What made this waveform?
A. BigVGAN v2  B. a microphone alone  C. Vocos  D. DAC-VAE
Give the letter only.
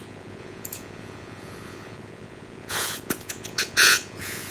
C